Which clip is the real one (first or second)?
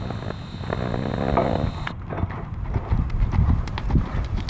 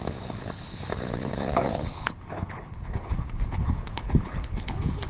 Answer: first